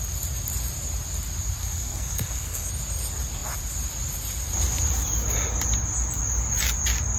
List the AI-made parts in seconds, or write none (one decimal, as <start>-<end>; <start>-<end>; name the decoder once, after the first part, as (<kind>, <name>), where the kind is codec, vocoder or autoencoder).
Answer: 1.6-2.7 (codec, SNAC)